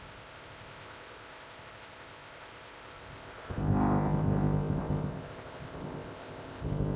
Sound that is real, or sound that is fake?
fake